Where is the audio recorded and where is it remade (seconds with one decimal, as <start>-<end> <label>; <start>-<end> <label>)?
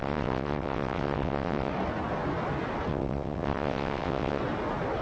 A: 0.0-1.7 remade; 1.7-2.9 recorded; 2.9-4.4 remade; 4.4-5.0 recorded